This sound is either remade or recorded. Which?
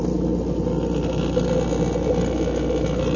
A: recorded